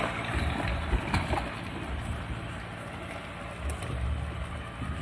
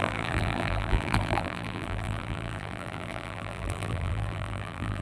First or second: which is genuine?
first